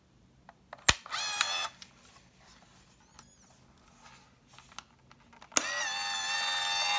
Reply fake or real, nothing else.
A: real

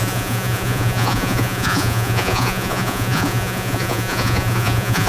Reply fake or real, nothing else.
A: fake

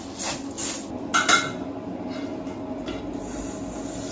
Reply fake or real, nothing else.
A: real